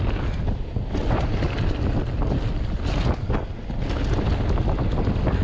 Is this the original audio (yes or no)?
yes